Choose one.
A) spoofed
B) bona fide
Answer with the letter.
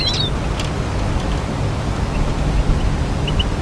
B